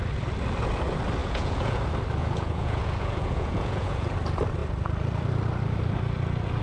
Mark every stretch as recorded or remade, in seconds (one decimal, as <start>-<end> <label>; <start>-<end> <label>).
0.0-1.2 recorded; 1.2-1.8 remade; 1.8-2.2 recorded; 2.2-4.1 remade; 4.1-6.6 recorded